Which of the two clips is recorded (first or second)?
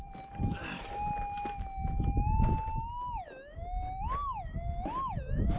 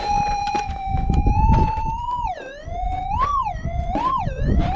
first